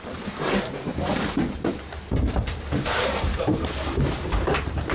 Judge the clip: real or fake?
fake